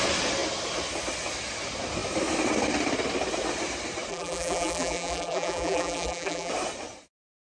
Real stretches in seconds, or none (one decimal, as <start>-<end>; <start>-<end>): 0.0-4.1; 6.5-7.4